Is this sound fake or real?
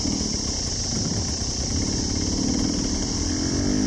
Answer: fake